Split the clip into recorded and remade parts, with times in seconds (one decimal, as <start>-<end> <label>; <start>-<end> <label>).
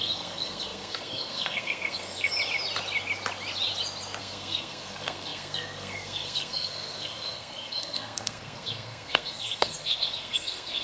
0.0-2.3 remade; 2.3-4.2 recorded; 4.2-10.8 remade